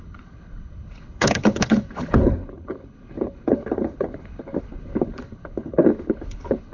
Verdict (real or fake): fake